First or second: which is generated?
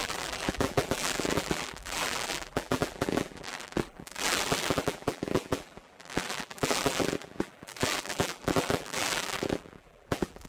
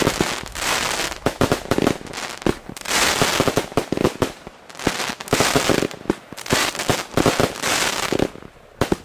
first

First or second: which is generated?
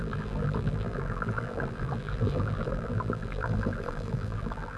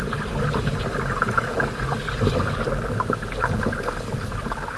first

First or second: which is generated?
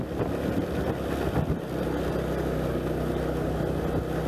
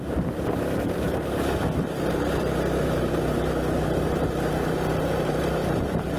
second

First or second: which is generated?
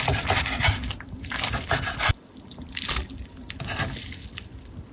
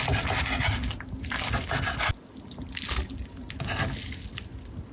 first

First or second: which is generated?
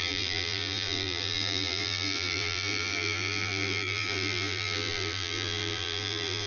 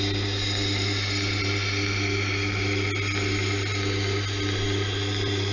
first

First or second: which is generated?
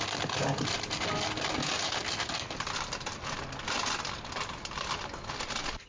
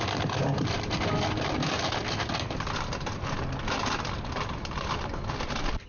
second